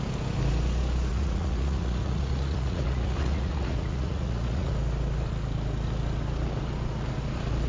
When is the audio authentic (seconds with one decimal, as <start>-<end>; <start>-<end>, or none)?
0.0-1.1; 4.7-7.7